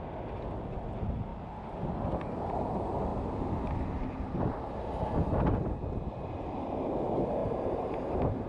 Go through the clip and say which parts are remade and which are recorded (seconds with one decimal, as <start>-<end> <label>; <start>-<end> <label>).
0.0-7.4 recorded; 7.4-8.5 remade